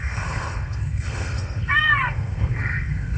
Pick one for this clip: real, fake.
fake